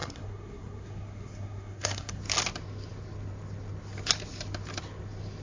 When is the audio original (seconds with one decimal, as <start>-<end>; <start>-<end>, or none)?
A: 2.2-5.4